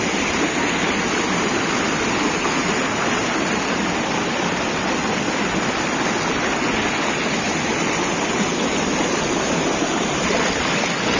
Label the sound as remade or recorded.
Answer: recorded